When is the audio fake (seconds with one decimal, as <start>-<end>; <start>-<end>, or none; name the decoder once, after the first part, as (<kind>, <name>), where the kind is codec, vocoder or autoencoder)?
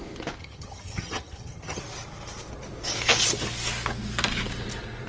0.4-1.8 (vocoder, HiFi-GAN)